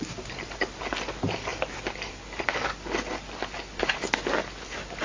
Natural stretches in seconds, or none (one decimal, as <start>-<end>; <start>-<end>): 0.0-5.0